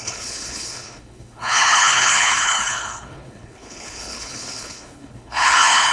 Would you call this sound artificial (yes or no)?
yes